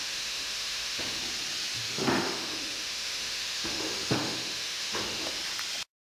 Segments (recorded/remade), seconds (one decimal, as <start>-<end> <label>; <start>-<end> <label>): 0.0-1.2 remade; 1.2-1.8 recorded; 1.8-5.4 remade; 5.4-6.0 recorded